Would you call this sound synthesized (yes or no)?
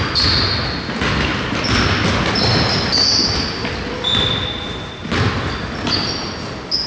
no